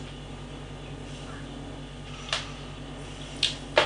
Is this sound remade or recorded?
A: recorded